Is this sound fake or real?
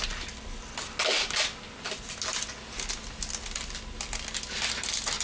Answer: real